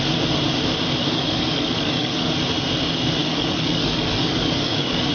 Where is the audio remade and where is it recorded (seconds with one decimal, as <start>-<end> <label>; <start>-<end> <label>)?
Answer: 0.0-1.0 recorded; 1.0-2.3 remade; 2.3-3.2 recorded; 3.2-5.1 remade